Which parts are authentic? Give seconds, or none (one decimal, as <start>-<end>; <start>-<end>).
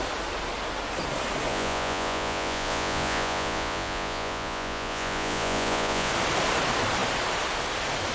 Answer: 0.0-1.5; 6.1-8.1